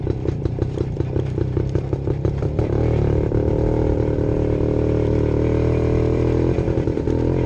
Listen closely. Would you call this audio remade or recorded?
remade